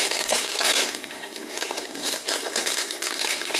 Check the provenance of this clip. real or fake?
fake